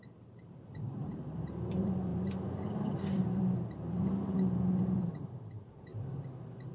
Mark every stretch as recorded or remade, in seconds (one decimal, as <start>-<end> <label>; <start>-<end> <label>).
0.0-5.9 remade; 5.9-6.7 recorded